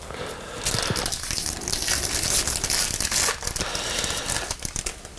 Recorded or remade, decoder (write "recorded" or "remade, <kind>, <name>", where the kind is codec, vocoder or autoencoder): recorded